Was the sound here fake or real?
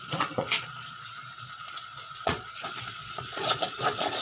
fake